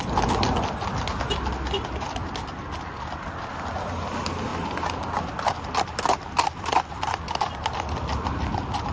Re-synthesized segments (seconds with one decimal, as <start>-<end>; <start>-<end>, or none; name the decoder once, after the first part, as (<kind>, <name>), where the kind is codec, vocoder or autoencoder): none